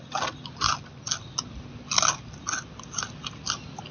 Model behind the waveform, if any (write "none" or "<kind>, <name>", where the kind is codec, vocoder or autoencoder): none